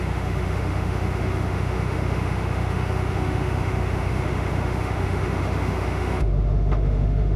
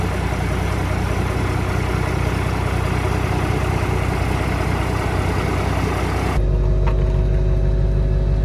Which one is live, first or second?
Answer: second